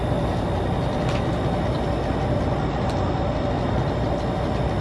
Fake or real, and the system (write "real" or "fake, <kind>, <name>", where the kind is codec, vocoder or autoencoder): real